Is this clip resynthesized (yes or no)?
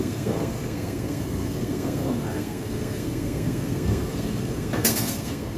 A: yes